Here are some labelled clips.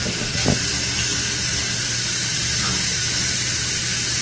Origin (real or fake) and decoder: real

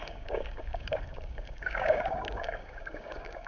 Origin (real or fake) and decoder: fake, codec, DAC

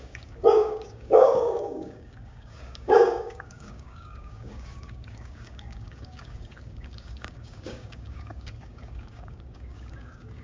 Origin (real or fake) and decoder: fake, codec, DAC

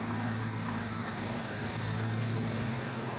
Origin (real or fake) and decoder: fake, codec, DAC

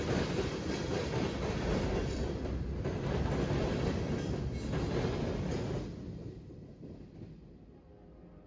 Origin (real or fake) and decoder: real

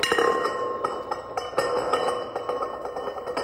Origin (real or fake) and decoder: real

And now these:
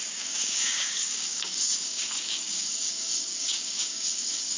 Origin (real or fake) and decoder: fake, codec, DAC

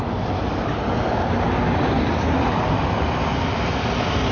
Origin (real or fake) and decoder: real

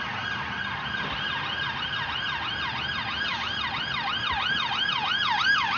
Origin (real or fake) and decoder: real